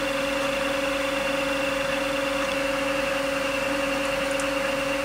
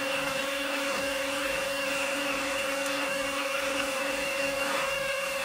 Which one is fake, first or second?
second